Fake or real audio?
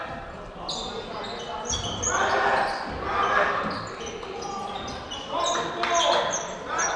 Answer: real